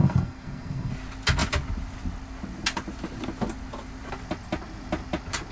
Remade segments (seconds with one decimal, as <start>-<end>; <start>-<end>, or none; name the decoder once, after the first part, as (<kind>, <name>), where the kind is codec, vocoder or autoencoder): 0.0-0.9 (codec, SNAC)